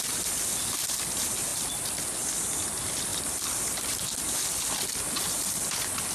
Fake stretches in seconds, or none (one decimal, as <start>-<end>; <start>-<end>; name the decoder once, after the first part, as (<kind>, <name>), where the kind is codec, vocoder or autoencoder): none